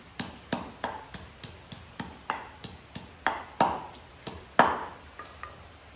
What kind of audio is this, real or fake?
real